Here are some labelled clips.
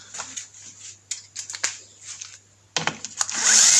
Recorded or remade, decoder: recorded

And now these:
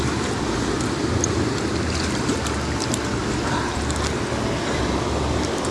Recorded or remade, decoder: recorded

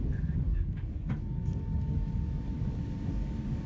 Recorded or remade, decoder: remade, codec, DAC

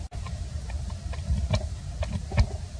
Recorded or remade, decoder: recorded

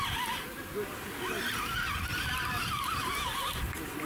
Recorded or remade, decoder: recorded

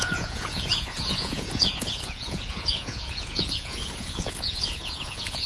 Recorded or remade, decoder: remade, vocoder, Vocos